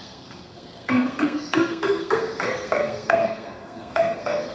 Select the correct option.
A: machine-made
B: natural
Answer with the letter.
A